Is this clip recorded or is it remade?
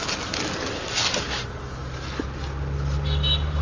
recorded